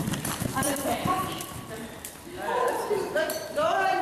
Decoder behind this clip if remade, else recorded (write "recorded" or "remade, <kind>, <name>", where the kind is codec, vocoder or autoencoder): remade, vocoder, BigVGAN v2